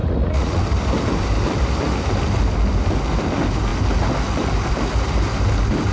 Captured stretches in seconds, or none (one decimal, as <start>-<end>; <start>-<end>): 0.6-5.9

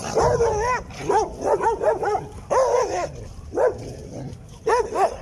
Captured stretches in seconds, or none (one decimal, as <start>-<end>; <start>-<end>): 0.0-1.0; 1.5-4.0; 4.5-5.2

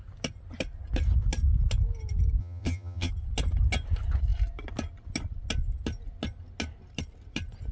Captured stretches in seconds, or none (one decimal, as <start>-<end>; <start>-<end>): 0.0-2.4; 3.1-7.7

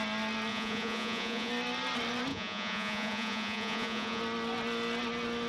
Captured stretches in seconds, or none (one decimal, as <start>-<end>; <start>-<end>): 0.0-0.5; 1.5-2.3; 4.2-5.5

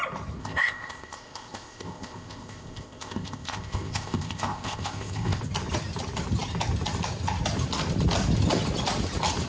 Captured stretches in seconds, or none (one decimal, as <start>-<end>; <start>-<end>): 0.0-0.4; 5.4-9.5

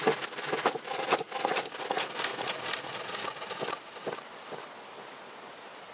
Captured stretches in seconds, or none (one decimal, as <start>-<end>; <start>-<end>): 0.0-5.9

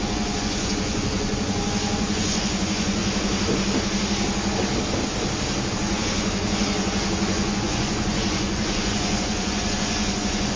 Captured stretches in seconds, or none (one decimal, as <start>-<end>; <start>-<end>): 3.0-5.7